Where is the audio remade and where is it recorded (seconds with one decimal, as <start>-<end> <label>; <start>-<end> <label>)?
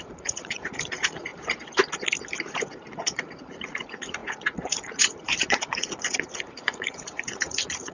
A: 0.0-1.3 remade; 1.3-2.9 recorded; 2.9-7.9 remade